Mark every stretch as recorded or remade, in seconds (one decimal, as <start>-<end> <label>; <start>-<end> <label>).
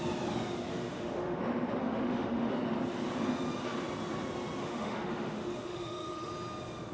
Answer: 0.0-0.7 recorded; 0.7-1.4 remade; 1.4-1.8 recorded; 1.8-2.5 remade; 2.5-4.6 recorded; 4.6-6.3 remade; 6.3-6.9 recorded